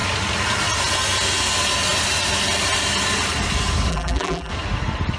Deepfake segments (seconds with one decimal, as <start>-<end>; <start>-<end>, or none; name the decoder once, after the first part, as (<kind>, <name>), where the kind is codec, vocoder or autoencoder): 3.9-4.5 (vocoder, BigVGAN v2)